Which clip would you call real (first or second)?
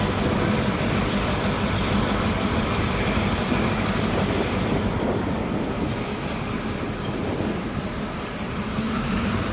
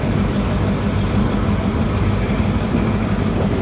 second